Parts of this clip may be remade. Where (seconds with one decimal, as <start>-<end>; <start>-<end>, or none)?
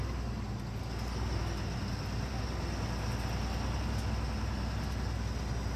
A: none